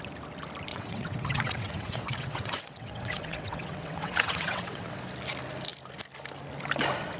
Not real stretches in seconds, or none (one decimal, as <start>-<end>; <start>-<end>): 0.7-5.0

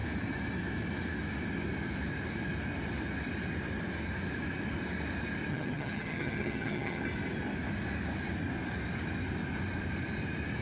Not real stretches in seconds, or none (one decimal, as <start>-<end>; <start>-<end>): 5.5-7.0

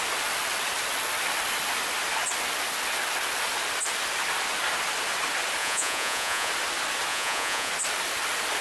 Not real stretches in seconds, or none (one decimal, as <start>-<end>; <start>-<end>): 5.6-6.5; 7.1-7.7